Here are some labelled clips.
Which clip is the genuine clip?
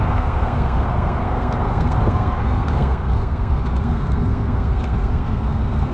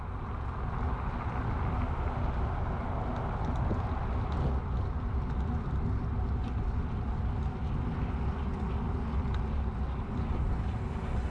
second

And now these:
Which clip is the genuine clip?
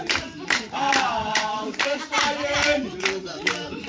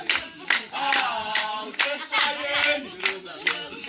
second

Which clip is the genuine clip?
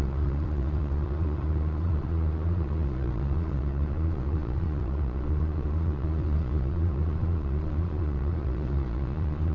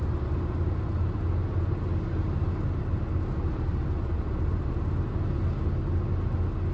second